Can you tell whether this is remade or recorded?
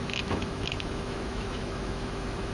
remade